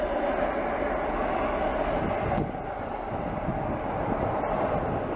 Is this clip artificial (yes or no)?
no